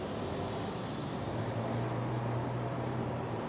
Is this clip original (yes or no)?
yes